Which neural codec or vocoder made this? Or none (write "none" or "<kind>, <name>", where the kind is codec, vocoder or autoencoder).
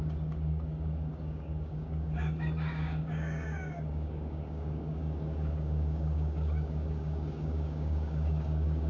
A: codec, DAC